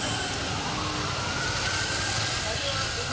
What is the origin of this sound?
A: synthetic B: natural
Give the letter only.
B